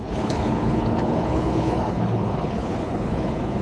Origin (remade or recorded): remade